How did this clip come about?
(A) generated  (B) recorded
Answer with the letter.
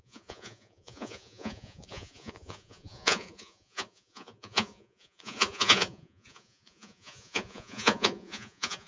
A